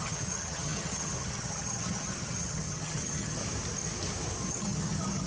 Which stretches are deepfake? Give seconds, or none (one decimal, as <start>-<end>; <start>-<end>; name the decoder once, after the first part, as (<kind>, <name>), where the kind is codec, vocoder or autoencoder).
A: 0.0-3.4 (vocoder, HiFi-GAN); 4.5-5.3